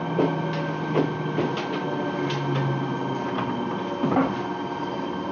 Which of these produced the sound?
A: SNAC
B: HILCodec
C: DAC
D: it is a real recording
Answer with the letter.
D